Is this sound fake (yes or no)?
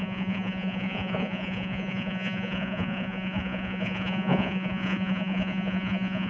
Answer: yes